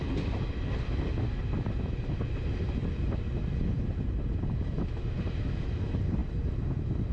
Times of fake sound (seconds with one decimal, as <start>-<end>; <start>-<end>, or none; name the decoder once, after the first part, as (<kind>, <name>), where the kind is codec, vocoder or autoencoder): none